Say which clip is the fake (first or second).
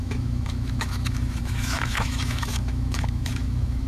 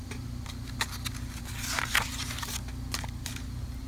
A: first